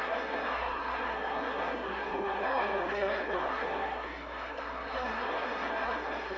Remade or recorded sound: remade